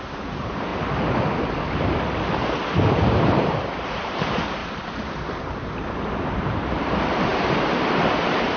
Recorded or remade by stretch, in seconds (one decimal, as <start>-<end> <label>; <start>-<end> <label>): 0.0-0.7 remade; 0.7-3.1 recorded; 3.1-4.6 remade; 4.6-6.7 recorded; 6.7-8.6 remade